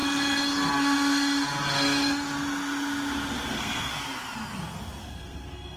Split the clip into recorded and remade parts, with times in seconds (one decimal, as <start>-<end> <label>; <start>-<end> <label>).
0.0-3.5 recorded; 3.5-3.9 remade; 3.9-5.0 recorded; 5.0-5.8 remade